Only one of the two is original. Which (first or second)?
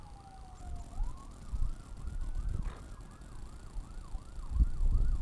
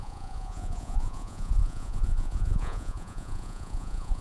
first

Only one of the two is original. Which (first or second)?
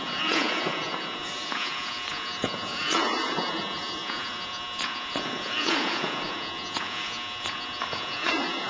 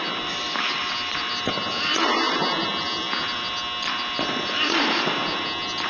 second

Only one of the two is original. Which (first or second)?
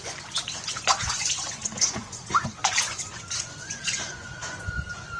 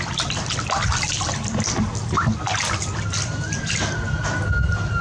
second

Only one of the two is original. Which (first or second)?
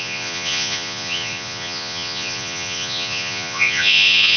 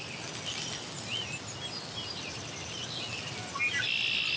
second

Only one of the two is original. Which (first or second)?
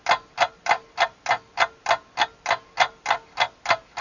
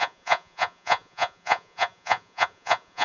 first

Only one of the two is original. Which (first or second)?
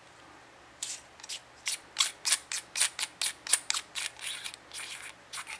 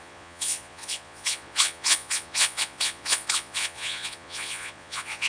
first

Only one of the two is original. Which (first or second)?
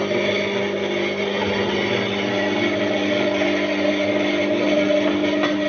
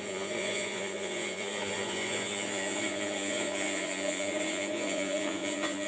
first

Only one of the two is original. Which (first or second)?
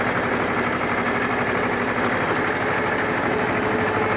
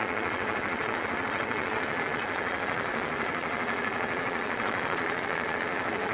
first